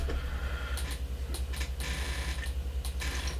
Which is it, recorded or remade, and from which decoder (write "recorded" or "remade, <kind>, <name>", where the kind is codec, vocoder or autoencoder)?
recorded